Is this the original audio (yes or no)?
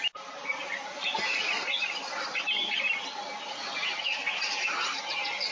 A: yes